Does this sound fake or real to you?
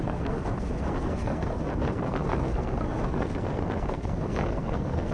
fake